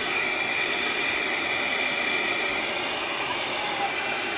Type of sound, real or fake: real